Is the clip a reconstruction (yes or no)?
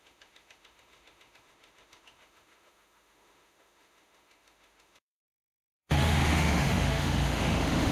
yes